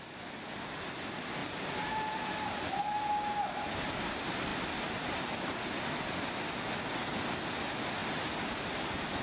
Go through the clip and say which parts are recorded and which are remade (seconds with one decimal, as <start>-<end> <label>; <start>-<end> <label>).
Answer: 0.0-1.4 recorded; 1.4-2.7 remade; 2.7-9.2 recorded